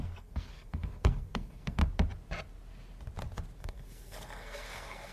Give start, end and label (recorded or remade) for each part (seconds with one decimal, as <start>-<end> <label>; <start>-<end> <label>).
0.0-1.8 remade; 1.8-3.6 recorded; 3.6-5.1 remade